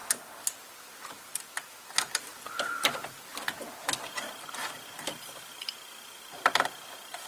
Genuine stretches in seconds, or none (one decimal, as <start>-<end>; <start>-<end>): 0.0-0.8; 3.3-5.5